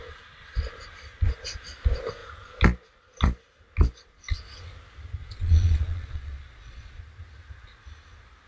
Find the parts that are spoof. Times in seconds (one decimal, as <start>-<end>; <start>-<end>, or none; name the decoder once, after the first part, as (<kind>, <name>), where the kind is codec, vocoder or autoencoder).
5.2-7.0 (vocoder, Vocos)